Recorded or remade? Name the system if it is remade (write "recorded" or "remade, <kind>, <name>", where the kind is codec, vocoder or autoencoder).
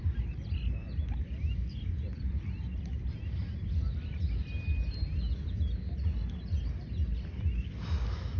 recorded